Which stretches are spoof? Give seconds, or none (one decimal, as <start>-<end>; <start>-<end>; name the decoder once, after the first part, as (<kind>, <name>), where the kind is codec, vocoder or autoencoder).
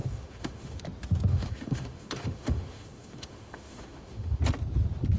0.0-0.8 (autoencoder, DAC-VAE); 1.3-4.4